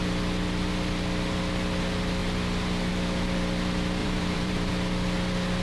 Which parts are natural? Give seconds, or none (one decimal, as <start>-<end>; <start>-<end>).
0.0-4.0; 4.7-5.6